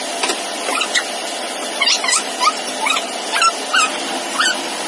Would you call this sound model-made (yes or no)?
no